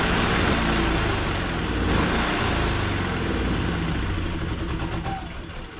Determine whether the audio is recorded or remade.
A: recorded